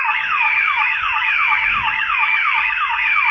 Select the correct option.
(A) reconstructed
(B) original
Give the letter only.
A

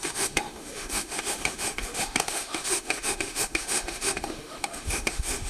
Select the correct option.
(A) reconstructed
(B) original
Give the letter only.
A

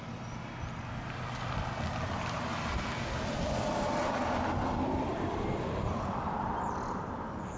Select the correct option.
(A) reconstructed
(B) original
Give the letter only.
B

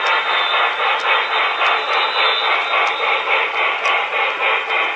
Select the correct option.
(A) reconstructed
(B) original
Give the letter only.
B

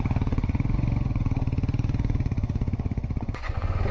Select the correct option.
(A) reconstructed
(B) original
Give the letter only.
A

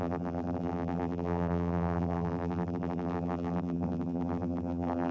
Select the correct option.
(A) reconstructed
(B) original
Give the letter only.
A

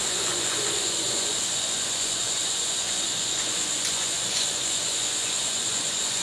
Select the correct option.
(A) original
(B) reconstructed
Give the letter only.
B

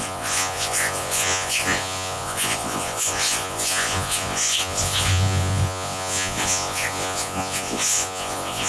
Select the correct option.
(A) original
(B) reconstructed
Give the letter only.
B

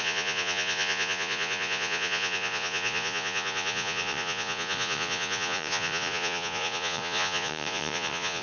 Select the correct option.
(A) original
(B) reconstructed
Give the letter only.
B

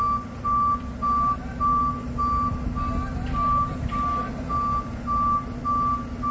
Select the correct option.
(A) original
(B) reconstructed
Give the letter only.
A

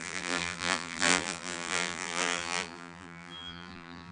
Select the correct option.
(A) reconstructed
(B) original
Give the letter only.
A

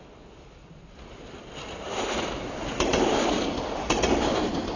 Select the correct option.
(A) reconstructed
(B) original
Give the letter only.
B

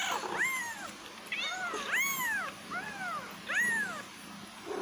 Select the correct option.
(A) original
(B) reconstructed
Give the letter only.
A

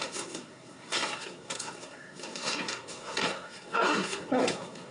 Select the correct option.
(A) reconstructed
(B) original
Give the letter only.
A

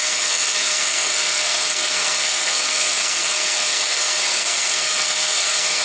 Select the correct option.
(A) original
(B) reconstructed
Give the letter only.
B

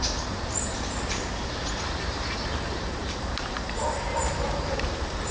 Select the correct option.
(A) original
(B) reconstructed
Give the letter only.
B